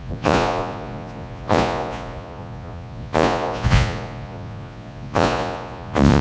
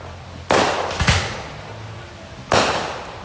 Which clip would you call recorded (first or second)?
second